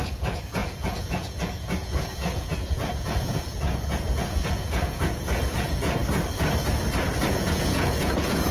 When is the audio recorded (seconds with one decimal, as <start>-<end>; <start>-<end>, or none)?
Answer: 6.0-7.3